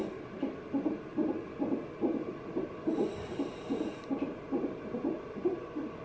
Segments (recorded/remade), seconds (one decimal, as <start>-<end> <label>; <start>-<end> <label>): 0.0-6.0 recorded